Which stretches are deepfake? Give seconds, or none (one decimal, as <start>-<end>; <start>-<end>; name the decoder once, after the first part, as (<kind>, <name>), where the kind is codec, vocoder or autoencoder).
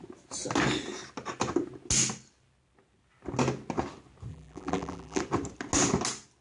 4.3-5.2 (vocoder, BigVGAN v2)